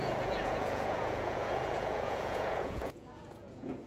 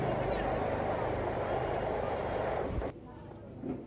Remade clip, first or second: first